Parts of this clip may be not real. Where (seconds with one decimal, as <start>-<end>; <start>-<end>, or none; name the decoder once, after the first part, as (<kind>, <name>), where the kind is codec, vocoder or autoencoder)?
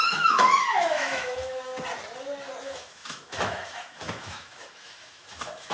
0.0-1.7 (autoencoder, DAC-VAE); 2.6-5.7